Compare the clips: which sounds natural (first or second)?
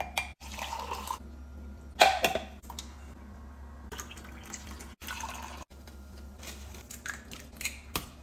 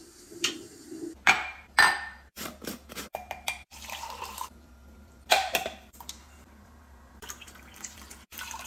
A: first